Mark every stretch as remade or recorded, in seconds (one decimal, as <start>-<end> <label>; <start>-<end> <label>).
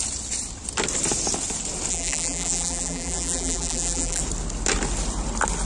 0.0-1.9 recorded; 1.9-4.2 remade; 4.2-5.6 recorded